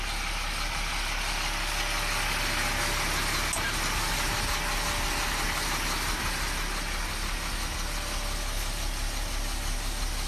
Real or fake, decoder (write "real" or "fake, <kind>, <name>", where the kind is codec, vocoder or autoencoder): real